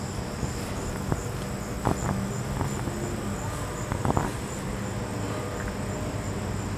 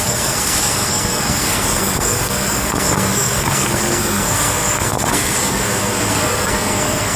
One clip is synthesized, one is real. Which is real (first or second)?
first